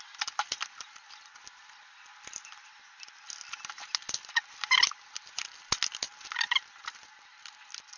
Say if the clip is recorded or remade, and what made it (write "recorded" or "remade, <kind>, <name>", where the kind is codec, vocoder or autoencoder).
recorded